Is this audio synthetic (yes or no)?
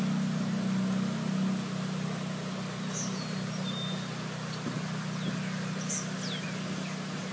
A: no